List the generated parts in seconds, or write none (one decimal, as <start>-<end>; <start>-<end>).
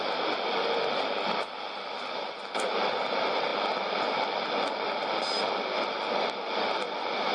none